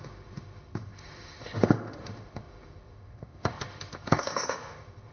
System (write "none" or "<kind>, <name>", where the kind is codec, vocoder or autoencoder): autoencoder, DAC-VAE